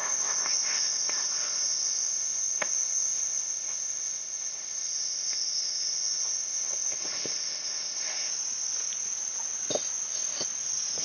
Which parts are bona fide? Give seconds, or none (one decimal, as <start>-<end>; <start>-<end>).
8.3-11.0